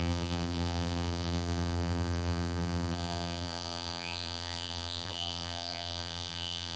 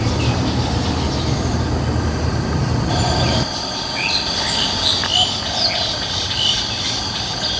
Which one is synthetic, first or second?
first